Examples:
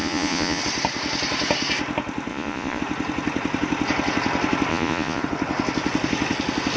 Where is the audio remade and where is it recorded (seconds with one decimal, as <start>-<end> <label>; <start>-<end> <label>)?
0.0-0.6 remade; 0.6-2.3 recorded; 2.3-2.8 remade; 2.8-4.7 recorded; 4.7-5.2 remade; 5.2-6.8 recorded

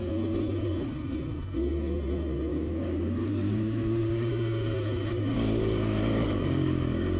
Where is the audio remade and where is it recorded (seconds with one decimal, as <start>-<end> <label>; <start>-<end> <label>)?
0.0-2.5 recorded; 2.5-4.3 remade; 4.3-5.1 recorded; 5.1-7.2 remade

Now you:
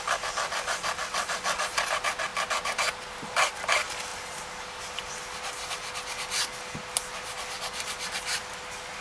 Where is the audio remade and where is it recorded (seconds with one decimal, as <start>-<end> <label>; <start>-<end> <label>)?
0.0-9.0 recorded

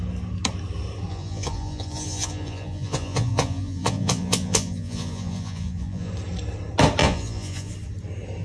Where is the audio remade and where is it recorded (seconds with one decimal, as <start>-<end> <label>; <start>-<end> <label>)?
0.0-1.1 recorded; 1.1-6.1 remade; 6.1-7.0 recorded; 7.0-7.7 remade; 7.7-8.4 recorded

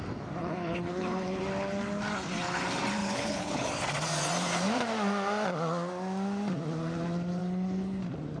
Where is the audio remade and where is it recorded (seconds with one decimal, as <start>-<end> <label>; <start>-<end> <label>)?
0.0-0.4 recorded; 0.4-1.4 remade; 1.4-3.0 recorded; 3.0-3.7 remade; 3.7-7.4 recorded; 7.4-8.0 remade; 8.0-8.4 recorded